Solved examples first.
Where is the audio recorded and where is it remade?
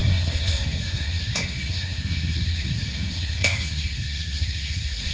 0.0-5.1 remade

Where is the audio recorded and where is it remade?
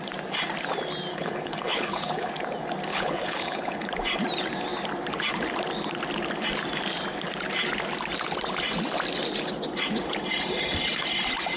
0.0-1.1 recorded; 1.1-2.3 remade; 2.3-2.9 recorded; 2.9-3.9 remade; 3.9-11.6 recorded